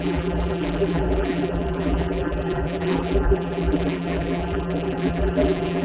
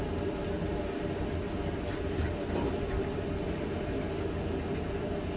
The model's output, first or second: first